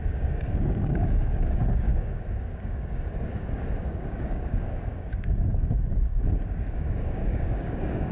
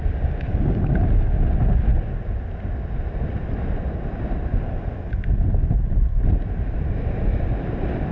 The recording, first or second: second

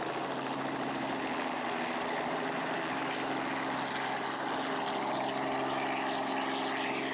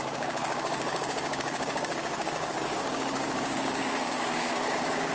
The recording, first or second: first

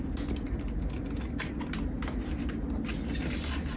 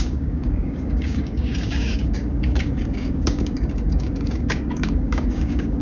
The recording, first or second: first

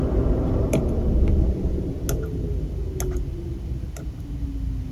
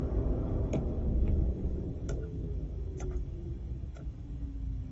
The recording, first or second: first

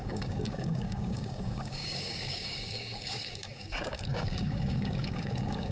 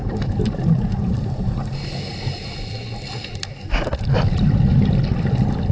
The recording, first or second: second